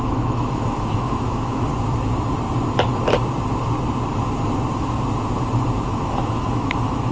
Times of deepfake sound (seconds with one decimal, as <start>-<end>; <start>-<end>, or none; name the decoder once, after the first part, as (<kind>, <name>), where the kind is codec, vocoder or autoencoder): 0.0-1.7 (autoencoder, DAC-VAE); 5.9-7.1